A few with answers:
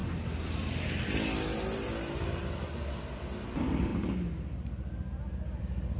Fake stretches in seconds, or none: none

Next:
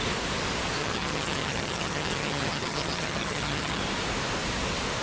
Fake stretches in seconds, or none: 0.8-3.8 (vocoder, HiFi-GAN)

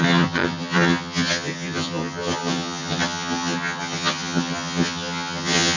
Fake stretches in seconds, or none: 0.0-5.8 (vocoder, HiFi-GAN)